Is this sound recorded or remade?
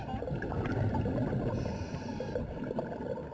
recorded